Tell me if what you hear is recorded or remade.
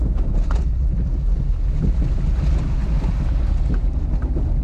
recorded